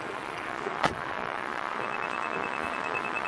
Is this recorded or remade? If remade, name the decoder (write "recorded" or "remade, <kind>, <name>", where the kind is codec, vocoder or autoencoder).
remade, vocoder, Vocos